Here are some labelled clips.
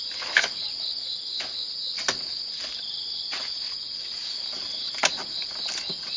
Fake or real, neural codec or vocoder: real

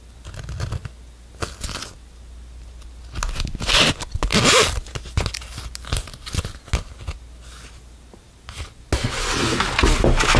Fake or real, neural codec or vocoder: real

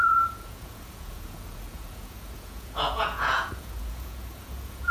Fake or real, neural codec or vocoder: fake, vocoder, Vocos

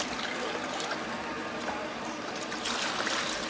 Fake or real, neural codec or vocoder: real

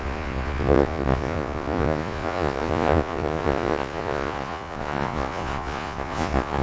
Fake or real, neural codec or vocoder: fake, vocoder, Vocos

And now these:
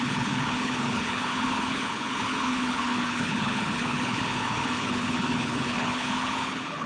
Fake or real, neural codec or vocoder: fake, codec, HILCodec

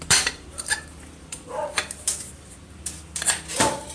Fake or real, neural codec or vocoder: fake, vocoder, BigVGAN v2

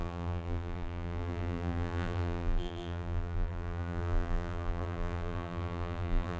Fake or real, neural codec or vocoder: fake, vocoder, BigVGAN v2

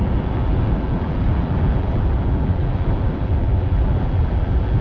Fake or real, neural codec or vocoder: fake, vocoder, BigVGAN v2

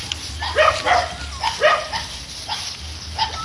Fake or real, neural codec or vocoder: real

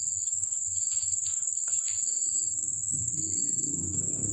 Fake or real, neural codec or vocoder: fake, codec, SNAC